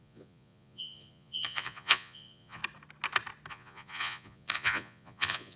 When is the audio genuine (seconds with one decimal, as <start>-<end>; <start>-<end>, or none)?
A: 2.6-3.5